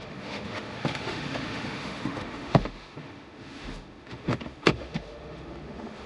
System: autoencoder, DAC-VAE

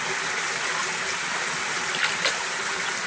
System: none